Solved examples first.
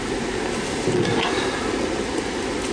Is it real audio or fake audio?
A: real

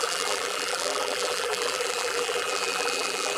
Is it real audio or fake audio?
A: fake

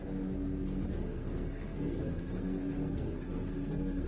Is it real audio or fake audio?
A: fake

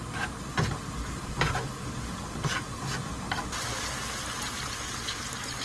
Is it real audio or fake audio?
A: real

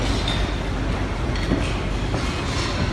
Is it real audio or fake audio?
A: real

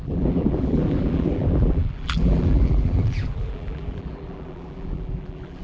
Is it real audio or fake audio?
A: fake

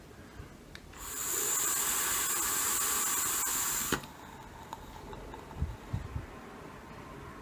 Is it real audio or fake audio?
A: real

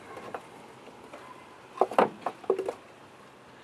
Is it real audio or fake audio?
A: real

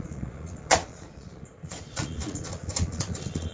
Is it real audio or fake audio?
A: fake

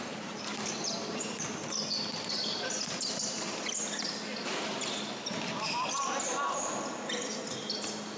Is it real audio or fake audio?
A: real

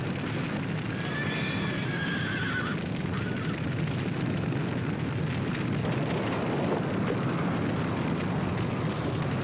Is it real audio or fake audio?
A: real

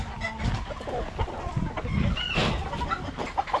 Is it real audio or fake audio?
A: real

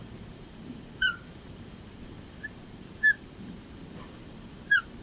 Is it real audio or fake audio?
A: fake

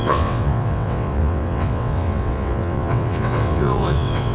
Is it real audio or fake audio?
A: fake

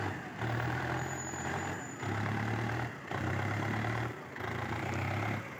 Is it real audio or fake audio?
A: fake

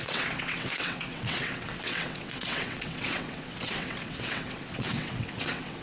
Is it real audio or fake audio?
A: fake